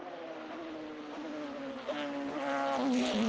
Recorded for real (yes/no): yes